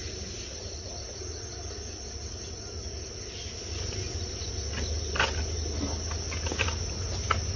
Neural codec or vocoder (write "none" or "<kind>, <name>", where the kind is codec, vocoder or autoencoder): none